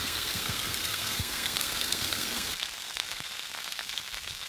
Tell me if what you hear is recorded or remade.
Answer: remade